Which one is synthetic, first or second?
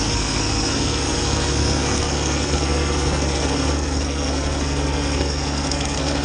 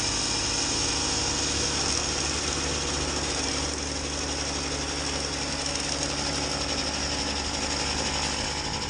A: first